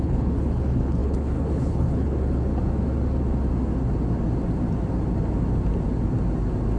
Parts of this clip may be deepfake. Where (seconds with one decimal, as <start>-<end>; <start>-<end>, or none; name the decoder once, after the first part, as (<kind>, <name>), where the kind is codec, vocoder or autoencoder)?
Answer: 0.0-2.5 (codec, HILCodec)